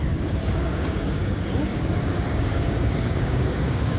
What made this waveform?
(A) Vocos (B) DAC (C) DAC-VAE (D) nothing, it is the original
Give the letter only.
B